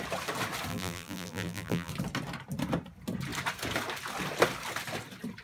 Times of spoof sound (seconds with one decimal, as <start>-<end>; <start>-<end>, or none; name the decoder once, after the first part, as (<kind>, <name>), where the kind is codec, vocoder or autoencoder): 0.7-1.9 (vocoder, BigVGAN v2)

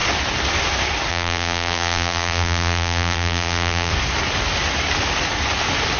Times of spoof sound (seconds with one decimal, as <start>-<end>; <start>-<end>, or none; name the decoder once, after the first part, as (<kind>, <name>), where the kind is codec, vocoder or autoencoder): 1.1-3.9 (vocoder, BigVGAN v2)

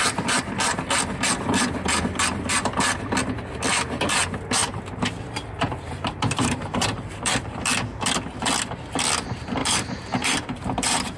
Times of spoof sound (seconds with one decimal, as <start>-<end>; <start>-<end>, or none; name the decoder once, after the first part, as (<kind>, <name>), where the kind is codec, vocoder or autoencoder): 4.6-7.5 (vocoder, BigVGAN v2); 9.6-11.2

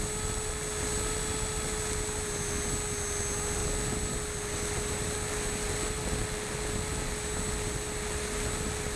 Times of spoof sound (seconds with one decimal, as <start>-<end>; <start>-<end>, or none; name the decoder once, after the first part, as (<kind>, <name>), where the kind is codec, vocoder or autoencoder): none

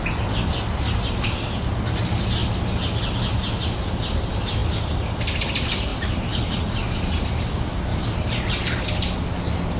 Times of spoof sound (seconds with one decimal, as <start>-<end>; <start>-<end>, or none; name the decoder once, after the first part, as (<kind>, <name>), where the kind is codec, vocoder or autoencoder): 5.9-6.5 (vocoder, BigVGAN v2); 7.9-8.5